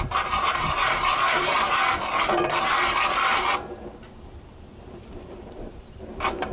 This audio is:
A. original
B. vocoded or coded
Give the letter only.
B